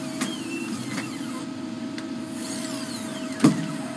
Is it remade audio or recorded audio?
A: recorded